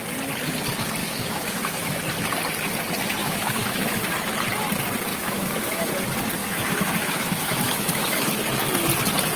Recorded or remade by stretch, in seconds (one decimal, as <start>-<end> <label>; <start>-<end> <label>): 0.0-1.0 recorded; 1.0-2.0 remade; 2.0-3.2 recorded; 3.2-4.0 remade; 4.0-5.1 recorded; 5.1-5.9 remade; 5.9-6.4 recorded; 6.4-8.3 remade; 8.3-9.4 recorded